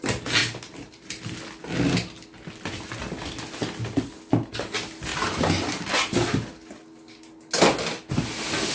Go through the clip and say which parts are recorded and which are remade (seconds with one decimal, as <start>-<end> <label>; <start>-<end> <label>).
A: 0.0-0.4 recorded; 0.4-1.1 remade; 1.1-8.7 recorded